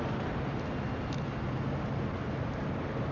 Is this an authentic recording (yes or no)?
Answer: yes